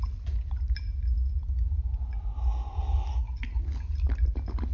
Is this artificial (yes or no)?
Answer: no